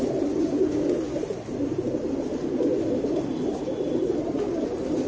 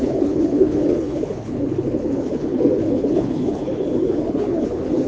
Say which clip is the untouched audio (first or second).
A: first